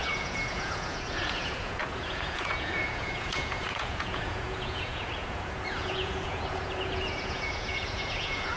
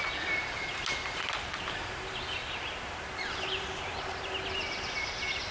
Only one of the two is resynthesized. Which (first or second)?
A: first